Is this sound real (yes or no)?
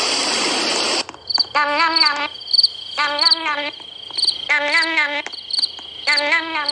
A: yes